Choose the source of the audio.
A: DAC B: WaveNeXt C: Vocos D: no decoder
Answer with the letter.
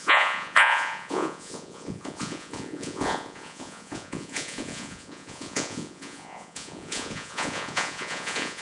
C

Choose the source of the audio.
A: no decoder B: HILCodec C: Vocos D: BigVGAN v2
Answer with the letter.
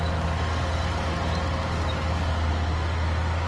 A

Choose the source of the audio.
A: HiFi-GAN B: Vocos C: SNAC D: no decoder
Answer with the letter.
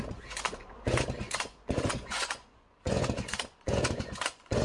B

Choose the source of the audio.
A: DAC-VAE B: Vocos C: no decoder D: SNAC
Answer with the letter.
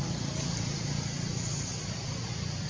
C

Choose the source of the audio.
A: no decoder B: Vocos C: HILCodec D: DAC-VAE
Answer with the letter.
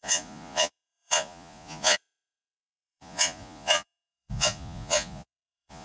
B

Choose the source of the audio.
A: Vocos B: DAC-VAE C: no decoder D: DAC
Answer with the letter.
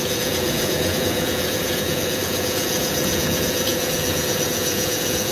A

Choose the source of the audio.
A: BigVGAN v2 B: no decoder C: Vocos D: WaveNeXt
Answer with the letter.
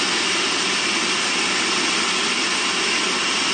B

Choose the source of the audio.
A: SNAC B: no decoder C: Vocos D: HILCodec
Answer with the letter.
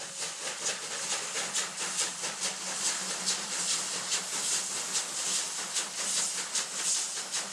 B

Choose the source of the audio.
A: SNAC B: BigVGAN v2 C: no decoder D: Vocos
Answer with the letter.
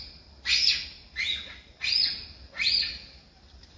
C